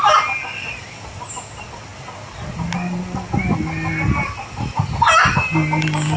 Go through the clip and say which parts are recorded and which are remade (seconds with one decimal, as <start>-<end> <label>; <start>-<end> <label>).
0.0-6.2 recorded